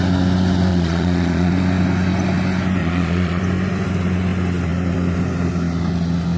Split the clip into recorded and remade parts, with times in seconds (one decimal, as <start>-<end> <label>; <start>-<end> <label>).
0.0-0.7 recorded; 0.7-1.5 remade; 1.5-2.8 recorded; 2.8-3.4 remade; 3.4-6.4 recorded